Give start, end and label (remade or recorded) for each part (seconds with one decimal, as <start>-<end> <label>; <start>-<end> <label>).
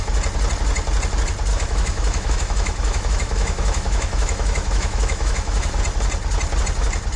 0.0-1.5 recorded; 1.5-5.8 remade; 5.8-7.2 recorded